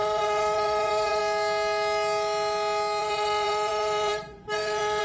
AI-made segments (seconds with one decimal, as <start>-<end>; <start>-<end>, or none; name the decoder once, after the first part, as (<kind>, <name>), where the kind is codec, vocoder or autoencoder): 0.0-1.2 (vocoder, Vocos); 3.0-5.0